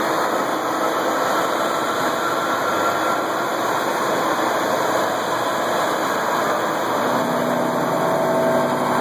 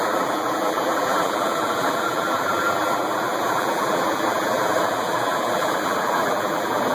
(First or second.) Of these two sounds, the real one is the first